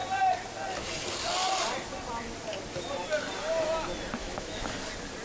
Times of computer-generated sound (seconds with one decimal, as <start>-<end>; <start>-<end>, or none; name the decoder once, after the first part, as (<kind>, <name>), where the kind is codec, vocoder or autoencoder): 4.2-4.7 (autoencoder, DAC-VAE)